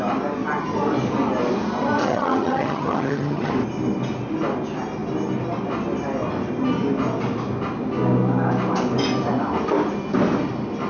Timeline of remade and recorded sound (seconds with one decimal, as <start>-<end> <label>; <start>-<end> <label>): 0.0-2.0 recorded; 2.0-3.5 remade; 3.5-10.9 recorded